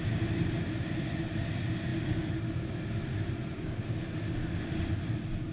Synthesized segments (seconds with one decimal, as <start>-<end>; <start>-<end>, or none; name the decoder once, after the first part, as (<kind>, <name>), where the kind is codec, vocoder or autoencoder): none